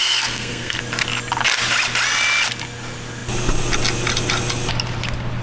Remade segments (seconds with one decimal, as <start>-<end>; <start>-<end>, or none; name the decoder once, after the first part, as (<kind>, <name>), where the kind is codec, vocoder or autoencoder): 0.0-0.8 (codec, SNAC)

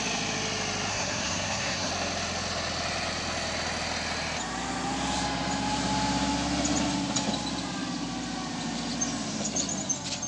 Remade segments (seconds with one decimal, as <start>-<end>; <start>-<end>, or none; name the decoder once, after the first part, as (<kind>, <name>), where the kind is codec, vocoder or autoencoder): 0.9-1.9 (codec, SNAC)

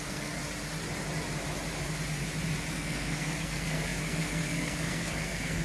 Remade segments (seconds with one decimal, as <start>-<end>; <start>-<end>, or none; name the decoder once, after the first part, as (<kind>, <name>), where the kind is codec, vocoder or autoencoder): 0.0-0.4 (codec, SNAC); 2.7-5.6

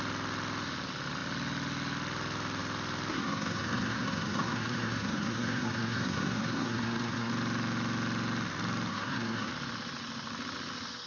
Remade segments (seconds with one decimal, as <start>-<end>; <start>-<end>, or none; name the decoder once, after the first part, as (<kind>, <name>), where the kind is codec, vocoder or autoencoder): 3.1-7.3 (codec, SNAC); 8.9-9.5